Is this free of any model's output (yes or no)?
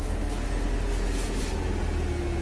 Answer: yes